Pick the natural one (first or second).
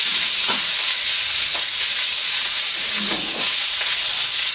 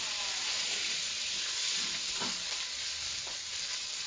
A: second